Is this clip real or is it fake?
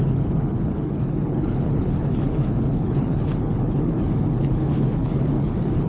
fake